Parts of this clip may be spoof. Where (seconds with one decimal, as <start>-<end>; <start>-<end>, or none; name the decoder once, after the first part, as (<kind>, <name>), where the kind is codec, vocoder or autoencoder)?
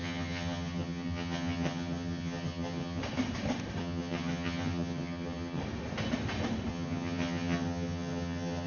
0.0-3.0 (vocoder, HiFi-GAN); 3.8-5.6; 6.7-8.7